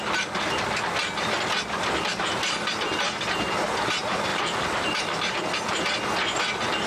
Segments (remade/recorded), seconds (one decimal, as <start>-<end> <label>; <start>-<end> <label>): 0.0-4.3 recorded; 4.3-5.4 remade; 5.4-6.9 recorded